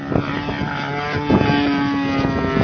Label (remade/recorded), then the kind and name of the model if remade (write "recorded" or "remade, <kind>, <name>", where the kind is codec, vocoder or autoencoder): recorded